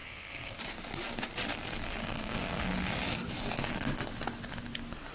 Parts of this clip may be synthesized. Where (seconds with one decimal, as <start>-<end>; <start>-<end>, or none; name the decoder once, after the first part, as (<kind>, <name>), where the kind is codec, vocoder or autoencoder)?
0.0-0.6 (codec, SNAC); 2.0-2.6